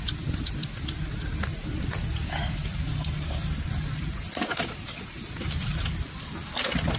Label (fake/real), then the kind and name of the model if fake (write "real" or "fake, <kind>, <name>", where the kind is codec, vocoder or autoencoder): real